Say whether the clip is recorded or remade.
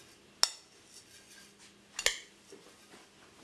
recorded